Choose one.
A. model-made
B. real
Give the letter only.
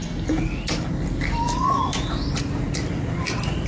B